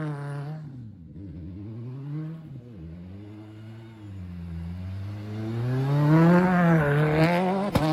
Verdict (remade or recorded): recorded